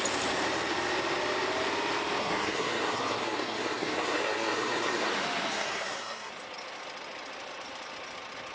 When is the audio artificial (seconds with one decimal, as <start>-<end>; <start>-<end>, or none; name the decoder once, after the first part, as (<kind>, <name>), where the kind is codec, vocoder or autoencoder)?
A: 2.2-5.1 (codec, SNAC); 5.5-6.3